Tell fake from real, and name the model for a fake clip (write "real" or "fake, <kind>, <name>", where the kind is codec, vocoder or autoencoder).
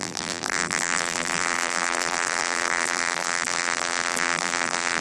fake, vocoder, BigVGAN v2